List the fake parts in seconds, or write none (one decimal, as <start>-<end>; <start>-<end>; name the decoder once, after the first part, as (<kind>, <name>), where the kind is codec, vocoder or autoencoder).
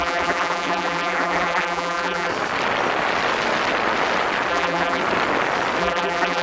0.0-2.3 (vocoder, BigVGAN v2); 4.5-5.0; 5.8-6.4